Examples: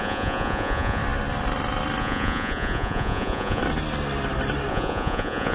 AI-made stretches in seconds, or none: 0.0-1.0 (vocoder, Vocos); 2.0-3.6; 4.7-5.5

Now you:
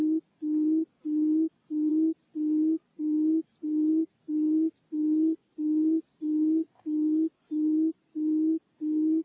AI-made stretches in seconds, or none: none

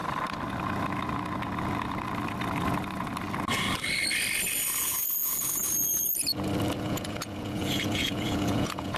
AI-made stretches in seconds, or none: 4.8-5.6 (vocoder, Vocos); 6.8-9.0

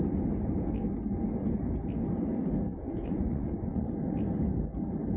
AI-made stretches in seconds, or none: 2.7-3.9 (vocoder, Vocos)

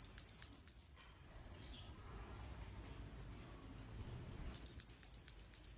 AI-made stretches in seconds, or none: 0.6-2.1 (vocoder, Vocos); 4.0-4.8

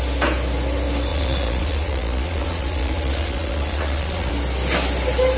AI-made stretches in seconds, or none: 1.1-4.3 (vocoder, Vocos)